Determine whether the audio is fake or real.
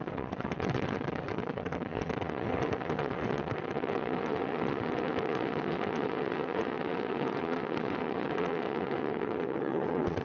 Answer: fake